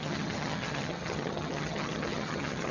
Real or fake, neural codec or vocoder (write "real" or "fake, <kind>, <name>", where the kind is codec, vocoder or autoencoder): fake, vocoder, HiFi-GAN